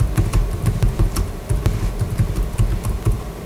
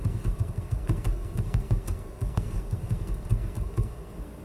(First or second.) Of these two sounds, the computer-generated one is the second